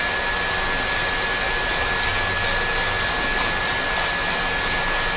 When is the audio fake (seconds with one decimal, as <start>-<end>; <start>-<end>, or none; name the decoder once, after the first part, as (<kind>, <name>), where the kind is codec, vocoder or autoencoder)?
none

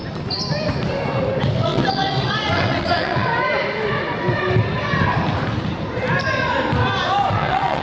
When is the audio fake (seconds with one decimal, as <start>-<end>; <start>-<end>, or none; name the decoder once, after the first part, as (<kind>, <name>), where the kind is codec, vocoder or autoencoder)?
1.6-3.3 (vocoder, WaveNeXt); 7.3-7.8